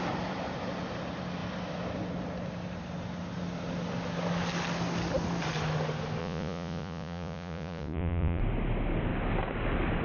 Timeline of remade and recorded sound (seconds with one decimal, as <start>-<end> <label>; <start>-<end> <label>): 0.0-6.2 recorded; 6.2-8.4 remade; 8.4-10.0 recorded